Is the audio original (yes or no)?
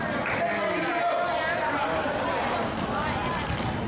yes